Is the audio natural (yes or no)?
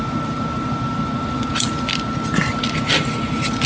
yes